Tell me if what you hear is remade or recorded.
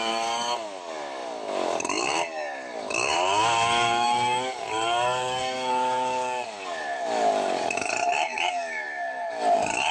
remade